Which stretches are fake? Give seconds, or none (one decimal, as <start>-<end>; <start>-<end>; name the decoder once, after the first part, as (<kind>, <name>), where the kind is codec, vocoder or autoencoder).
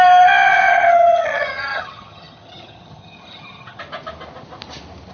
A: 0.7-3.8 (vocoder, HiFi-GAN)